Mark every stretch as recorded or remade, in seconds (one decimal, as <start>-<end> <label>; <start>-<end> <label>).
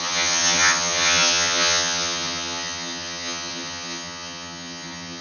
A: 0.0-5.2 remade